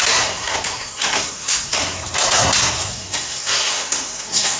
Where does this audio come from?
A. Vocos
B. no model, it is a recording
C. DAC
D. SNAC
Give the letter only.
D